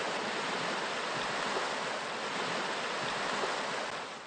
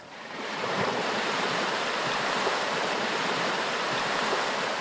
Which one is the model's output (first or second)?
second